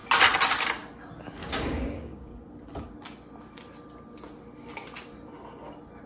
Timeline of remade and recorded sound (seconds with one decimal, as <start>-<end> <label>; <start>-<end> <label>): 0.0-1.4 recorded; 1.4-2.3 remade; 2.3-6.1 recorded